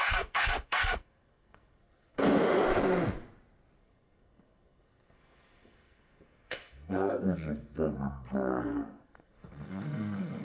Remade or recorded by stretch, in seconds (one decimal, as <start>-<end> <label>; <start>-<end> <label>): 0.0-2.2 remade; 2.2-3.8 recorded; 3.8-10.4 remade